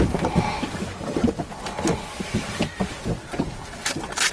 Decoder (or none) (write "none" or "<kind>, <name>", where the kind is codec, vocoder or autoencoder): none